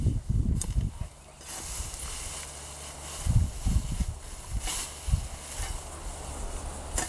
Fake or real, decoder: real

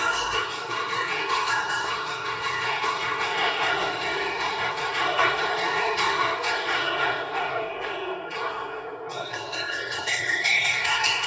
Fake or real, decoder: fake, codec, SNAC